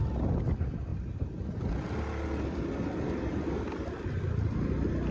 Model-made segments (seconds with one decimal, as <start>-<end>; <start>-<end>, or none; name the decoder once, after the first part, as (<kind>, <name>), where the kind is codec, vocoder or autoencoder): 0.0-0.9 (vocoder, BigVGAN v2); 4.0-5.1